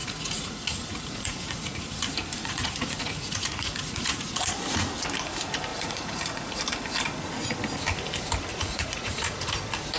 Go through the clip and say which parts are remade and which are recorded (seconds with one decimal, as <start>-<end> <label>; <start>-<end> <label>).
0.0-1.8 remade; 1.8-2.4 recorded; 2.4-4.4 remade; 4.4-5.7 recorded; 5.7-6.6 remade; 6.6-8.5 recorded; 8.5-9.5 remade; 9.5-10.0 recorded

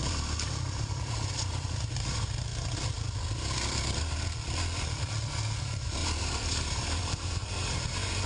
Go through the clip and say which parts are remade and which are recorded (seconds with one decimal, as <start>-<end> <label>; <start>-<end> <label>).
0.0-2.5 remade; 2.5-5.6 recorded; 5.6-8.3 remade

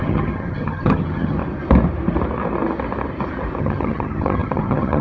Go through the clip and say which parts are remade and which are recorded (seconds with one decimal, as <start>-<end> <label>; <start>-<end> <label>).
0.0-1.4 remade; 1.4-3.6 recorded; 3.6-5.0 remade

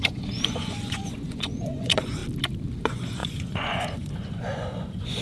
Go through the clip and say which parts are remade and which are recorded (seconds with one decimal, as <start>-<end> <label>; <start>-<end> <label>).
0.0-2.2 remade; 2.2-2.8 recorded; 2.8-5.2 remade

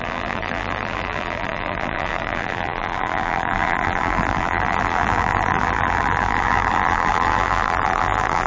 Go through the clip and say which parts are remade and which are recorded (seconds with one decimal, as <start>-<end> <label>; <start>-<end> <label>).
0.0-8.5 remade

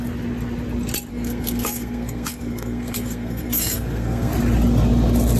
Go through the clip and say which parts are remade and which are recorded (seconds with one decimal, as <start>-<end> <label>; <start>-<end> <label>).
0.0-1.1 recorded; 1.1-4.3 remade; 4.3-5.4 recorded

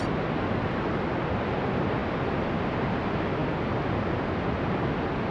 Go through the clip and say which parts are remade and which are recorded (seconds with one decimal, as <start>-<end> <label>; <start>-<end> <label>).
0.0-5.3 recorded